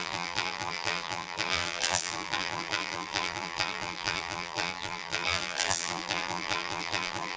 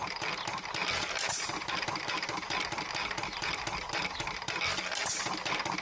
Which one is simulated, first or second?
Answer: first